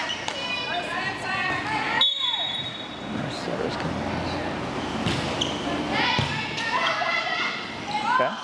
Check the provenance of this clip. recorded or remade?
recorded